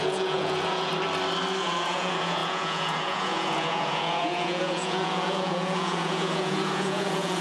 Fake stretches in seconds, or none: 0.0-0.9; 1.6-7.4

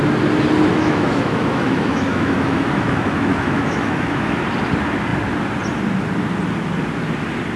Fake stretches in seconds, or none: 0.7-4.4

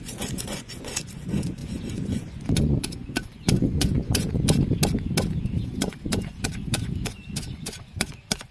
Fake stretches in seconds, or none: 0.0-4.6; 5.4-8.5

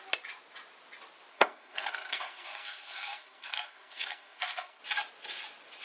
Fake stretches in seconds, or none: 1.3-4.8

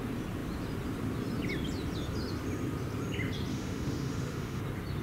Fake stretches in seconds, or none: 3.5-4.6

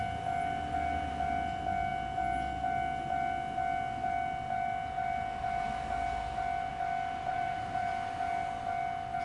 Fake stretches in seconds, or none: 7.3-7.9

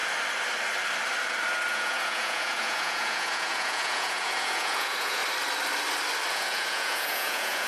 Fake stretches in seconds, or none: 1.7-5.2; 6.3-7.7

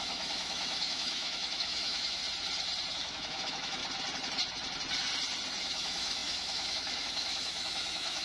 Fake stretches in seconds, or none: 0.0-2.2; 2.9-3.8; 5.6-8.2